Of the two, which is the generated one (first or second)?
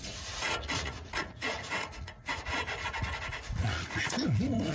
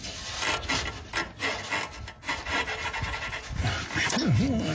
first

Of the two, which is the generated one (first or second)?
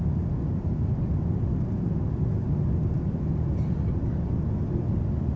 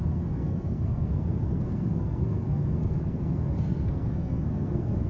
second